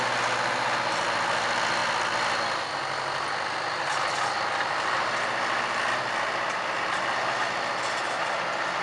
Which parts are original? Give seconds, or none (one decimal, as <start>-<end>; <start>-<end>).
0.0-8.8